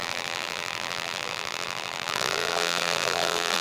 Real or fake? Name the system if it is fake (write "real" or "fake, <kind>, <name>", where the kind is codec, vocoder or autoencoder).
fake, vocoder, BigVGAN v2